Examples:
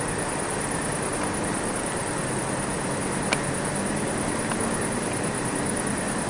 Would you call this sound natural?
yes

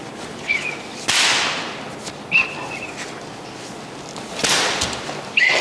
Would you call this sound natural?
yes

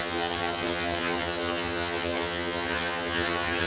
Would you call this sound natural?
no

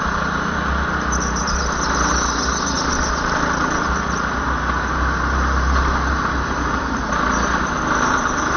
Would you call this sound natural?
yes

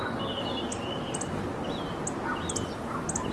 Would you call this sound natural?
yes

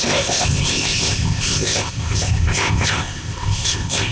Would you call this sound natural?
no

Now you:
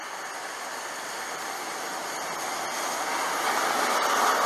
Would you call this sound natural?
yes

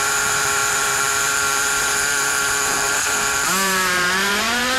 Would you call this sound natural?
no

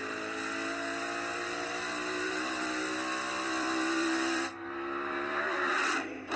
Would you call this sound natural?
no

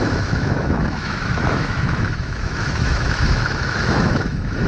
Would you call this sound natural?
no